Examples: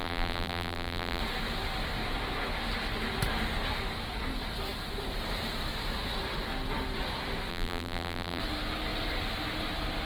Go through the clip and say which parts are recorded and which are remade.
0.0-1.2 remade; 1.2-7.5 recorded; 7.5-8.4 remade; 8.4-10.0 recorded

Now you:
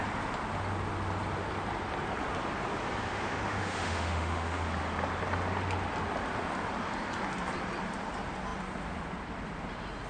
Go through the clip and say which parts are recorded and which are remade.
0.0-3.1 recorded; 3.1-4.6 remade; 4.6-10.1 recorded

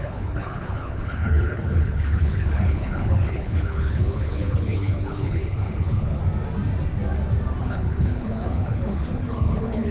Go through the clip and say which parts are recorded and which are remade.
0.0-6.2 remade; 6.2-7.6 recorded; 7.6-9.9 remade

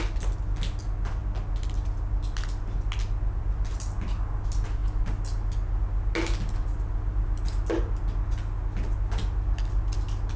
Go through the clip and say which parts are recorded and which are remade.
0.0-10.4 recorded